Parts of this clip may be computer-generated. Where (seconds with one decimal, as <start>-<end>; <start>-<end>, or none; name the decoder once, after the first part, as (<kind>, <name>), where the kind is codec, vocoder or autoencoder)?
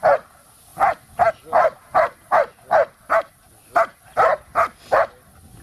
none